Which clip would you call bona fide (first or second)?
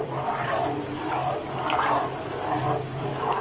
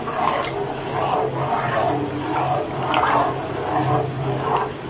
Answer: second